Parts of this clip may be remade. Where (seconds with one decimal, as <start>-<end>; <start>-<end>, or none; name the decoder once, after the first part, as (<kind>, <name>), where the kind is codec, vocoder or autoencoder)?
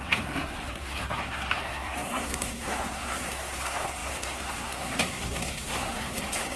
0.0-6.6 (codec, SNAC)